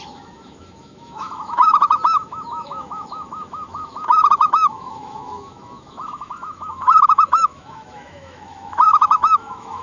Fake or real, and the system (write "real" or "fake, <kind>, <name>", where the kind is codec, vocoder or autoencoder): fake, autoencoder, DAC-VAE